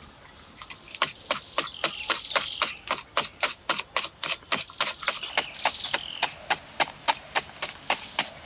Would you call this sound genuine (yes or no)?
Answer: yes